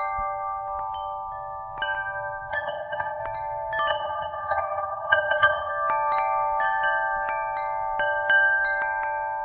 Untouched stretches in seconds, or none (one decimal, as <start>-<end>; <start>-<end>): 0.0-2.5; 3.2-3.9; 5.7-9.4